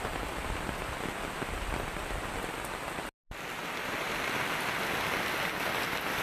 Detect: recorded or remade recorded